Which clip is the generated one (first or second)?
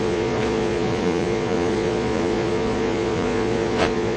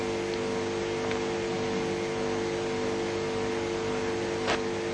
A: first